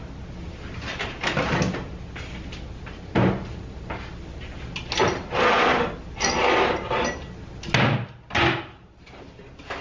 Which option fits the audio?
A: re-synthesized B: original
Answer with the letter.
B